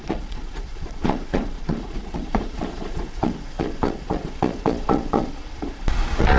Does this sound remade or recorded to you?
remade